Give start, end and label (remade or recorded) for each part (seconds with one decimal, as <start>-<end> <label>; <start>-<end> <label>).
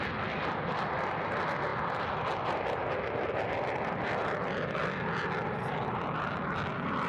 0.0-7.1 recorded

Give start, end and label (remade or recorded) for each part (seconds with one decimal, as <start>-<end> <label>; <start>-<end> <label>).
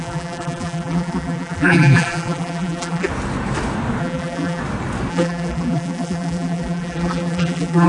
0.0-3.1 remade; 3.1-4.0 recorded; 4.0-4.6 remade; 4.6-5.1 recorded; 5.1-7.9 remade